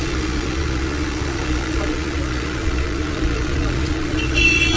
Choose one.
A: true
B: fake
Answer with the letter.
B